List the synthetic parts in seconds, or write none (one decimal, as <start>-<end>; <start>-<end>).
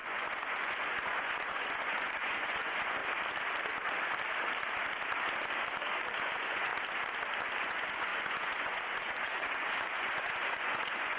0.0-3.0; 6.2-6.7; 7.6-11.2